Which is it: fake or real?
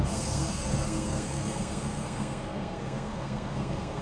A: fake